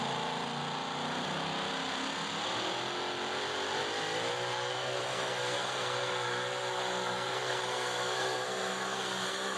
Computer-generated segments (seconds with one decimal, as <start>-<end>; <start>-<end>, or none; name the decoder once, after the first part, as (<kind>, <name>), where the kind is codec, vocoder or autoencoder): 4.5-9.6 (codec, SNAC)